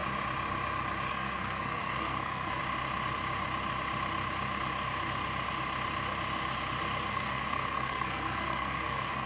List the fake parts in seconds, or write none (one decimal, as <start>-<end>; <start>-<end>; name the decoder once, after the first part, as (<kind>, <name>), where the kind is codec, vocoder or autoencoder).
1.1-2.6 (codec, SNAC); 7.1-9.3